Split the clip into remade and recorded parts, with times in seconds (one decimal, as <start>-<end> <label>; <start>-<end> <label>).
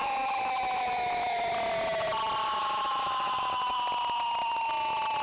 0.0-1.5 remade; 1.5-2.4 recorded; 2.4-3.8 remade; 3.8-5.2 recorded